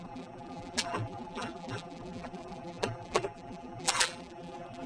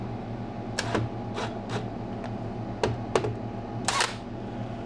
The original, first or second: second